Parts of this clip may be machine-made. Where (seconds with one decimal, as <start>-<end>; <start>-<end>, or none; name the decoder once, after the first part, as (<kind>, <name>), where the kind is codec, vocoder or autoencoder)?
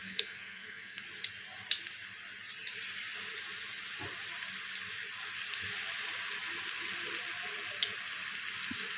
0.0-1.0 (codec, SNAC)